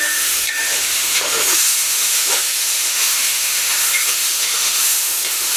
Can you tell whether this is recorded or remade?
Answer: remade